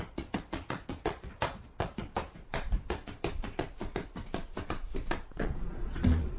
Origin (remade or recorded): remade